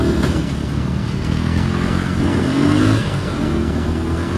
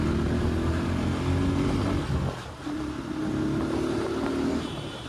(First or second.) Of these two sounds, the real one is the second